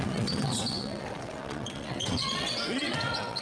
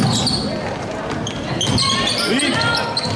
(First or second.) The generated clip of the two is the first